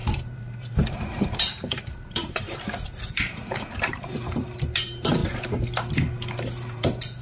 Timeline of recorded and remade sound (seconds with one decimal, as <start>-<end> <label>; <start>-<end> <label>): 0.0-5.2 remade; 5.2-6.5 recorded; 6.5-7.2 remade